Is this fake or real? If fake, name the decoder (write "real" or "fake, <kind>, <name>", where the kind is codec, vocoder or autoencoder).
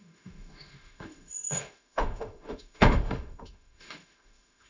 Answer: fake, autoencoder, DAC-VAE